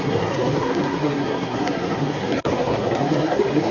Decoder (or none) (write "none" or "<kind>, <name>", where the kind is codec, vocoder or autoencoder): codec, SNAC